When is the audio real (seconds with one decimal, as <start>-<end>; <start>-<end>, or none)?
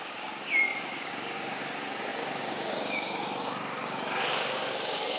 none